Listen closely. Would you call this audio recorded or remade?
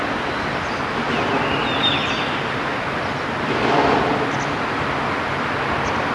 recorded